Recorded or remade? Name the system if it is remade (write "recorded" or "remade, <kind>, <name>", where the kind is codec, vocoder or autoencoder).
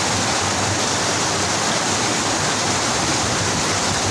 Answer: recorded